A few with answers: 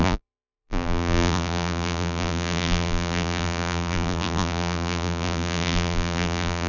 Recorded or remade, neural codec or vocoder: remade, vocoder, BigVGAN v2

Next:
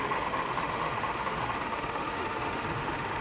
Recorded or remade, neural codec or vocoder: remade, autoencoder, DAC-VAE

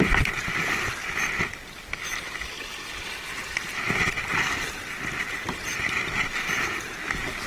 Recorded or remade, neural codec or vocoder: recorded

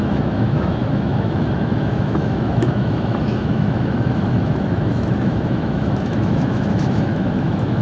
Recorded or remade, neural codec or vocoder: remade, autoencoder, DAC-VAE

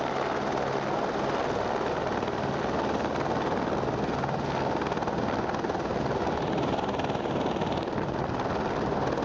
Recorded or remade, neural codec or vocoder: recorded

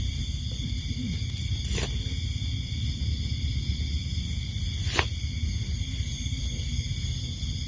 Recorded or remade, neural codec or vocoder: recorded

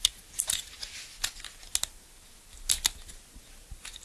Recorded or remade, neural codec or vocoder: recorded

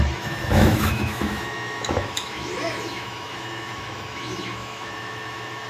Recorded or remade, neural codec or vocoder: remade, autoencoder, DAC-VAE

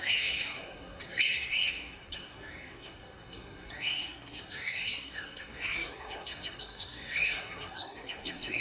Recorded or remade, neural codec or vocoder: remade, codec, SNAC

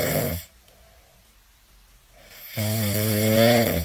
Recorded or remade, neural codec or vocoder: recorded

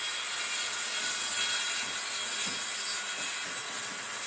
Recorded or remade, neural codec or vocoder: recorded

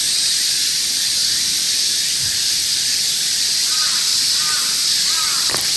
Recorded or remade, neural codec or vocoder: remade, vocoder, BigVGAN v2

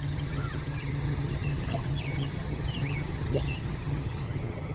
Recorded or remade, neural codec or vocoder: remade, vocoder, HiFi-GAN